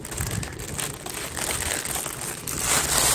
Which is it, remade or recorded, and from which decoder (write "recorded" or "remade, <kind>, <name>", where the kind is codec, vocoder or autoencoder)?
remade, vocoder, BigVGAN v2